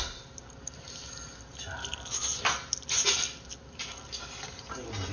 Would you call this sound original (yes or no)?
yes